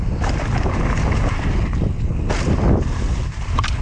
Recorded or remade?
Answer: recorded